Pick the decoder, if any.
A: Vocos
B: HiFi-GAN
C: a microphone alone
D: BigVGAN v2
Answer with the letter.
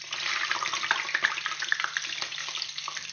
C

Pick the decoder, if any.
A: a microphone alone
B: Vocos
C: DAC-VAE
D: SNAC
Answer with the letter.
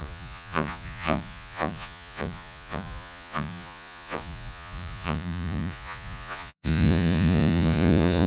B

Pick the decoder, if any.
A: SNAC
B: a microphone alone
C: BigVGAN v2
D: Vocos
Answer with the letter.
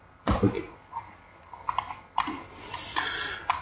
B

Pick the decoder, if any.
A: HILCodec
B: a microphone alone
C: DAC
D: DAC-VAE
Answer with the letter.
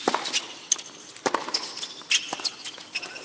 B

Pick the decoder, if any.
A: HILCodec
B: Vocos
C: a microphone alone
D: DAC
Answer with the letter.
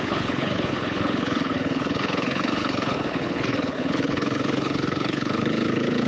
A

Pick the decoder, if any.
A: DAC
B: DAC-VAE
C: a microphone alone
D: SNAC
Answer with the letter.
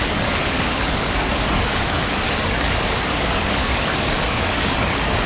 A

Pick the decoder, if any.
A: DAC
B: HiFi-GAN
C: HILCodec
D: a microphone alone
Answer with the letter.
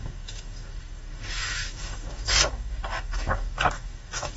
A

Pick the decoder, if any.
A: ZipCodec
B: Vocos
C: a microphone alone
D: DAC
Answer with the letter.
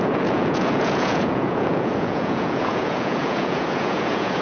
B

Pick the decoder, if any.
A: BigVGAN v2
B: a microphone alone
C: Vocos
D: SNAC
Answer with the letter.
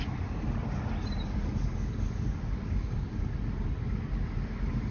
B